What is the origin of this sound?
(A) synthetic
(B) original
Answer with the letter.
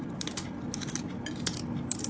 B